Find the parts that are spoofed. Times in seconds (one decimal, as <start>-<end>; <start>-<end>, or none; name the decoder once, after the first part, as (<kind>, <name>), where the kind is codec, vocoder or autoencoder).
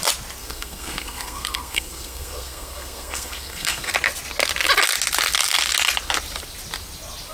0.4-3.9 (codec, SNAC)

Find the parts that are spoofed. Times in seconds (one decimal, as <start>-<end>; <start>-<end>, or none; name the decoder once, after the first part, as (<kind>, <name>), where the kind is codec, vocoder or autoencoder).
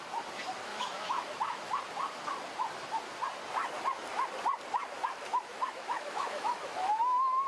0.7-1.8 (autoencoder, DAC-VAE); 5.3-7.5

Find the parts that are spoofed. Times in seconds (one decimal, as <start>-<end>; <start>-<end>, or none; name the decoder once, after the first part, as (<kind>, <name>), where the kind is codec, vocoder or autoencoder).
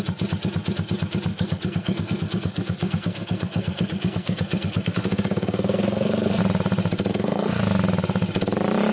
1.3-6.4 (codec, SNAC); 7.1-7.6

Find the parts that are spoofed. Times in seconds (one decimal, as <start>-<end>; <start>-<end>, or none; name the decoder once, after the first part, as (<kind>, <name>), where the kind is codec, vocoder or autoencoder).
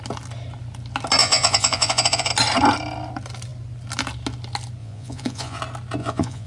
1.2-2.3 (vocoder, Vocos); 4.8-5.6; 6.0-6.5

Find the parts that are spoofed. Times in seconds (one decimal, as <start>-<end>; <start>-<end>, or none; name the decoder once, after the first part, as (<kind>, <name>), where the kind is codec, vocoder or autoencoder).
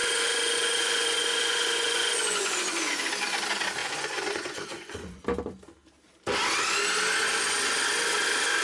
0.0-2.9 (vocoder, Vocos); 3.8-5.2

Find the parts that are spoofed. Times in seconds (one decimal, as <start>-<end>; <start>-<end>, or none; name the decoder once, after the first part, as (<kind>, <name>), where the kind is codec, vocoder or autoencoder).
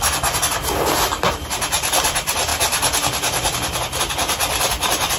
none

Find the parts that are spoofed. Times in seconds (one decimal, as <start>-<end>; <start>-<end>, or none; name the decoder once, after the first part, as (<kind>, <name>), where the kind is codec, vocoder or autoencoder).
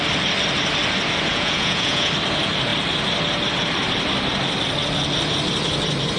1.3-2.1 (vocoder, Vocos)